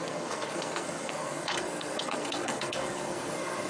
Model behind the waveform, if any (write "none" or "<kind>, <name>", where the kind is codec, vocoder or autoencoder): codec, SNAC